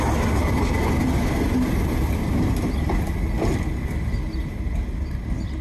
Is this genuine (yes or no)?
yes